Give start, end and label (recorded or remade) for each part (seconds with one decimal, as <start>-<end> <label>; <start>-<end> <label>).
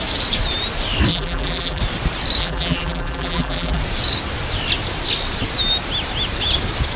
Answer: 0.0-1.1 recorded; 1.1-1.8 remade; 1.8-2.4 recorded; 2.4-3.8 remade; 3.8-7.0 recorded